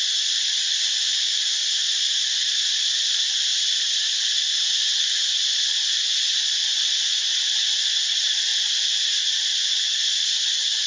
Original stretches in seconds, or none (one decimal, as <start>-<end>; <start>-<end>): 0.0-10.9

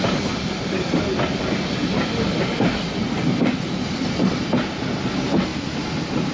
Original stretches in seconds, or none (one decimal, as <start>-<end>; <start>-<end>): 0.0-6.3

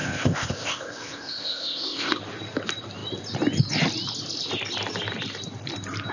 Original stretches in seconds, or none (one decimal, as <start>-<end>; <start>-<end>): 2.2-6.1

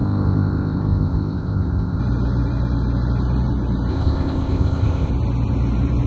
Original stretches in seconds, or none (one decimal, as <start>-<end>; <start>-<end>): 2.0-3.9; 5.1-6.1

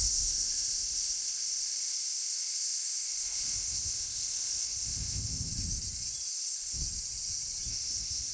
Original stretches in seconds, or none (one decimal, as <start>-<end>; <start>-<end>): 5.5-6.3; 6.8-7.7

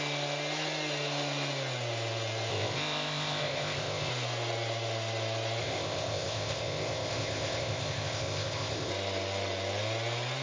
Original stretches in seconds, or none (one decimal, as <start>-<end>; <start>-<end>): 0.0-2.5; 4.1-5.6; 8.9-10.4